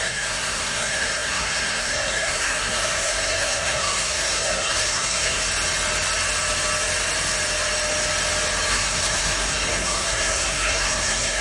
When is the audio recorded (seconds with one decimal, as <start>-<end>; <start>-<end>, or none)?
5.4-8.7